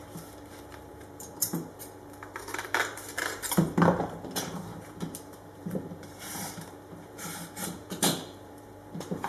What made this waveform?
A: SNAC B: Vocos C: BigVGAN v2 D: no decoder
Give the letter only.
C